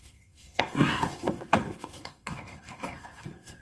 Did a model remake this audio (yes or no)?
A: yes